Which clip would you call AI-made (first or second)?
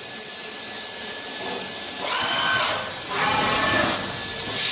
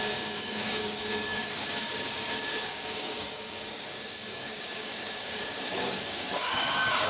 second